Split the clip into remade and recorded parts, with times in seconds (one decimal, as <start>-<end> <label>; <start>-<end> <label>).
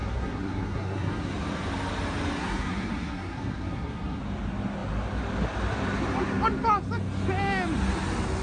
0.0-1.3 remade; 1.3-2.4 recorded; 2.4-4.2 remade; 4.2-8.4 recorded